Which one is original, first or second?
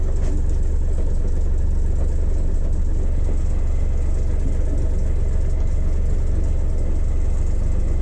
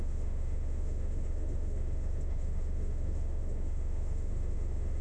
first